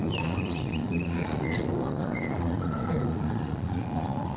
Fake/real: fake